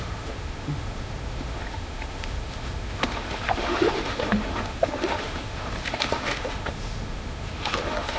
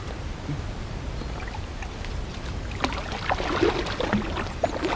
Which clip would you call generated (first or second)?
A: first